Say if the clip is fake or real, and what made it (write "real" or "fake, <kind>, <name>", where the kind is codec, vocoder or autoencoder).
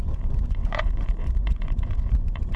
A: fake, vocoder, Vocos